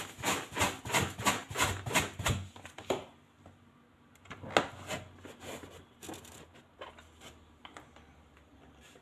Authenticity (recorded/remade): recorded